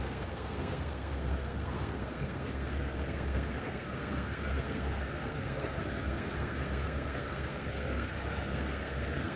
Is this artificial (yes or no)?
yes